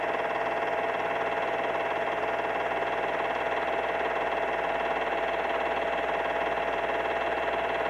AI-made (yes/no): no